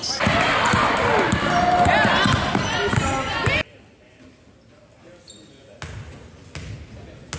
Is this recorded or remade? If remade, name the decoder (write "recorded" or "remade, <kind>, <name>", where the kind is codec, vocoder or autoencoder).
recorded